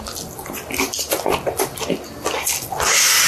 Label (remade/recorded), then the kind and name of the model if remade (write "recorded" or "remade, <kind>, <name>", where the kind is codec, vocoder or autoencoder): recorded